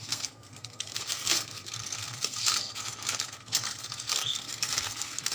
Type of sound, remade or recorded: remade